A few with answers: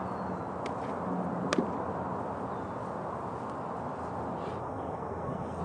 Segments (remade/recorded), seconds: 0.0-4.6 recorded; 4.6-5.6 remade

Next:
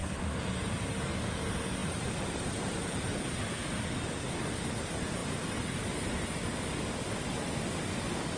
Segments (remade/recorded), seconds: 0.0-1.8 recorded; 1.8-3.2 remade; 3.2-8.4 recorded

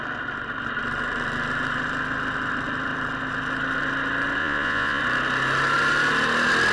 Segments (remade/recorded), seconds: 0.0-4.4 recorded; 4.4-5.0 remade; 5.0-6.7 recorded

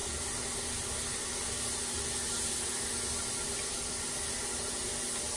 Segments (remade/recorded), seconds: 0.0-5.4 recorded

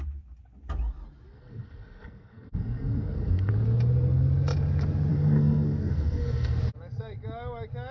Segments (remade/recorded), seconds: 0.0-1.3 recorded; 1.3-3.5 remade; 3.5-5.1 recorded; 5.1-6.6 remade; 6.6-7.9 recorded

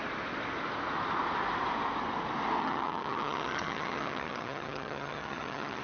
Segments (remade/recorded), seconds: 0.0-2.6 recorded; 2.6-5.8 remade

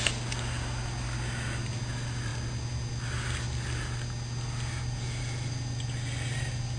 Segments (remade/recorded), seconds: 0.0-6.8 recorded